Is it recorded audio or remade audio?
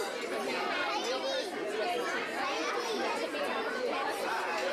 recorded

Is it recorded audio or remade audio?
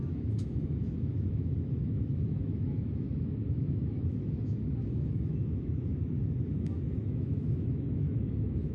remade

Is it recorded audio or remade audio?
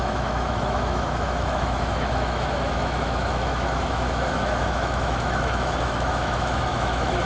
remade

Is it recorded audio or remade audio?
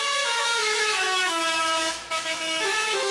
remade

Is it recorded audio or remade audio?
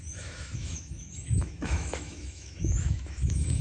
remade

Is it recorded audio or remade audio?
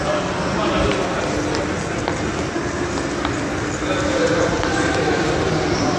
recorded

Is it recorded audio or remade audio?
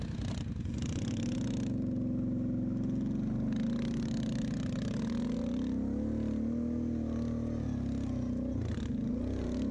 recorded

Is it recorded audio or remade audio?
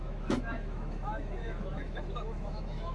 remade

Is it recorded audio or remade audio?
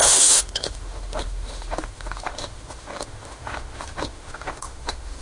remade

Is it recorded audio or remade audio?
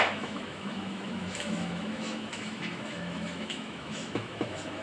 remade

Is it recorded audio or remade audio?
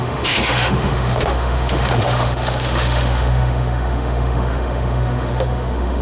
remade